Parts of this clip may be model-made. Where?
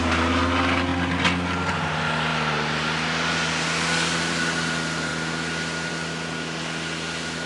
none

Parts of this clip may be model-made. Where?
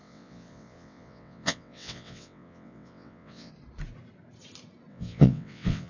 0.0-3.5 (vocoder, WaveNeXt); 4.9-5.9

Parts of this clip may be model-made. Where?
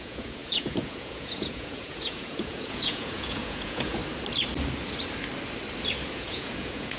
0.0-4.0 (vocoder, Vocos); 6.2-7.0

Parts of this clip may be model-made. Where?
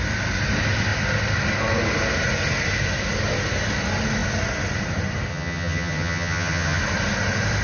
5.3-6.8 (vocoder, HiFi-GAN)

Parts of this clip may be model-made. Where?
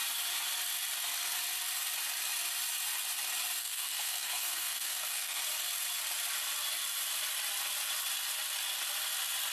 3.6-5.4 (codec, SNAC)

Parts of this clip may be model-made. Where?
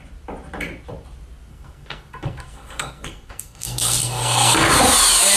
1.5-4.7 (codec, SNAC)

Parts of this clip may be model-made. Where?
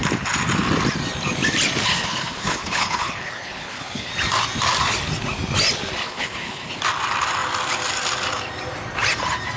1.9-4.1 (codec, HILCodec); 6.0-6.8